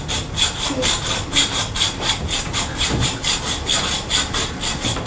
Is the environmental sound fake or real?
real